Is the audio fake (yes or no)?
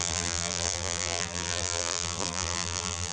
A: yes